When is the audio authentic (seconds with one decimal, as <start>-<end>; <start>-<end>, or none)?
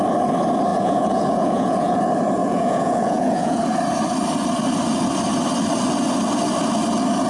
0.0-0.7; 2.0-2.4; 3.6-7.3